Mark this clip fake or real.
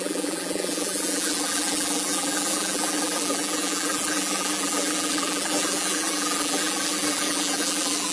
fake